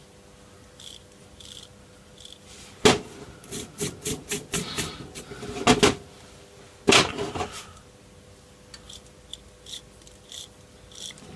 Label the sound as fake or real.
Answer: real